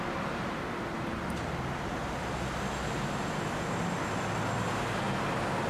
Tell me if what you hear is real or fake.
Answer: real